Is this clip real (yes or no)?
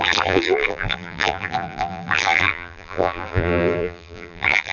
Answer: no